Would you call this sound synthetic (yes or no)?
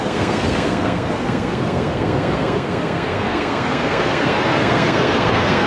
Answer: yes